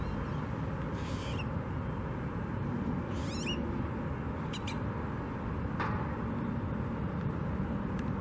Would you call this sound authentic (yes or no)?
yes